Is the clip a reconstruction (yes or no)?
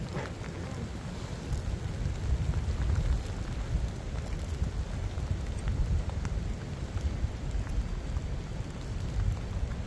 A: no